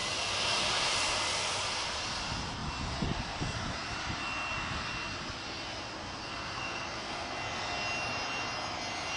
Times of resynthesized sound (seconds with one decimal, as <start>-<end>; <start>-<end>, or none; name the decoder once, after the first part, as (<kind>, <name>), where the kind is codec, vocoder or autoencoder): 6.0-7.3 (codec, SNAC)